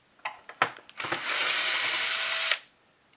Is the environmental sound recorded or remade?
recorded